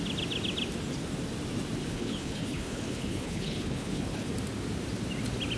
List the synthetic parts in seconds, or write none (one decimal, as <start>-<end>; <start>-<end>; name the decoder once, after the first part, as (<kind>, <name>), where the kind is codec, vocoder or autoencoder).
1.8-4.3 (codec, HILCodec)